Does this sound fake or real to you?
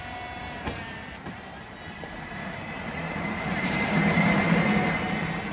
fake